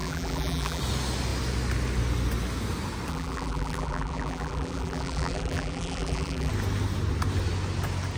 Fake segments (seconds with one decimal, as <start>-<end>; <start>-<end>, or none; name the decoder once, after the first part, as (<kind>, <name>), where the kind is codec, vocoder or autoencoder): 0.0-0.8 (vocoder, BigVGAN v2); 3.1-6.5